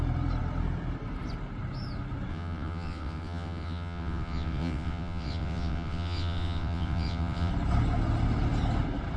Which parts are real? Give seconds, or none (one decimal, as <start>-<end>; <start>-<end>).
0.0-2.3; 7.5-9.2